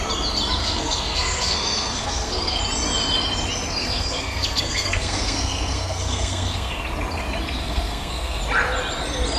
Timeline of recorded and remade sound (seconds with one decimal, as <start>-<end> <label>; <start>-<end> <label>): 0.0-0.6 recorded; 0.6-2.6 remade; 2.6-3.8 recorded; 3.8-6.8 remade; 6.8-7.6 recorded; 7.6-8.4 remade; 8.4-9.4 recorded

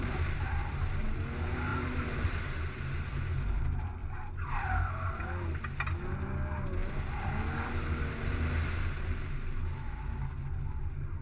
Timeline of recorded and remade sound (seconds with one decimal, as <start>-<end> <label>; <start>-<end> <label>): 0.0-1.7 recorded; 1.7-2.4 remade; 2.4-6.8 recorded; 6.8-7.4 remade; 7.4-11.2 recorded

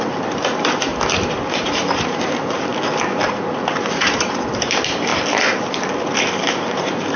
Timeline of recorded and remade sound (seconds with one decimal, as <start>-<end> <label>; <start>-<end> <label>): 0.0-0.9 remade; 0.9-1.5 recorded; 1.5-2.7 remade; 2.7-3.3 recorded; 3.3-5.1 remade; 5.1-6.0 recorded; 6.0-7.2 remade

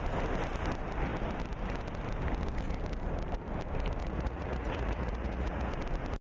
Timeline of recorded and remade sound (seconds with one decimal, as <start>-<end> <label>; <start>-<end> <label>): 0.0-4.0 recorded; 4.0-5.7 remade; 5.7-6.2 recorded

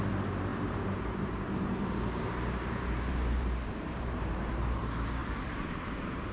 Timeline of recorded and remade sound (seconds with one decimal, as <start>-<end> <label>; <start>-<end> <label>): 0.0-6.3 remade